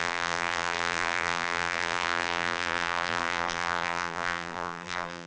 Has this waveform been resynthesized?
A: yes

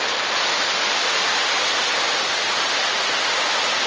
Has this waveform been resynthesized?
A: no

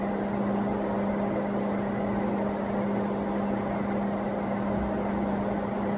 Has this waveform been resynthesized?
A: no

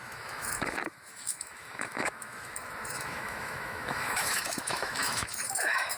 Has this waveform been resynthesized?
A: yes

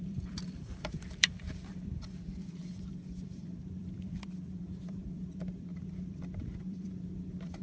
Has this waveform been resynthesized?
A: yes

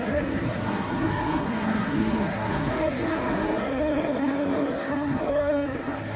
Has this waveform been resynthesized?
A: yes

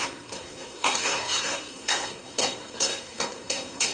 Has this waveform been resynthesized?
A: yes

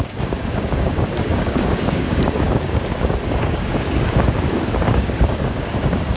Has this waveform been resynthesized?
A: yes